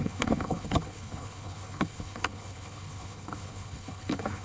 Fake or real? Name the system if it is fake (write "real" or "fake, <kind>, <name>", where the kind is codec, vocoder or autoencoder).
fake, codec, HILCodec